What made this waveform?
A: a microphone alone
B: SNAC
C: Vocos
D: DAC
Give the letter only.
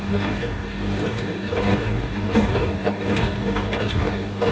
D